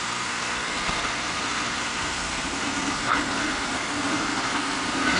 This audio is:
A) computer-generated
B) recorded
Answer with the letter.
A